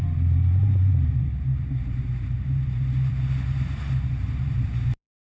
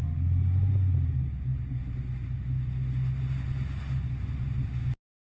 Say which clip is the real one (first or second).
second